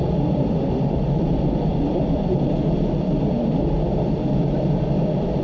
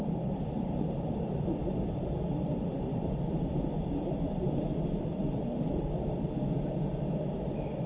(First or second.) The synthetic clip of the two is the second